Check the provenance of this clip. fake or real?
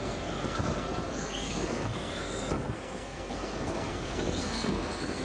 fake